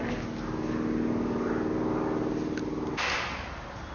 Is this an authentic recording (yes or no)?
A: yes